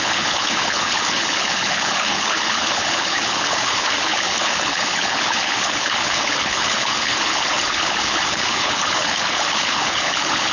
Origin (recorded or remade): remade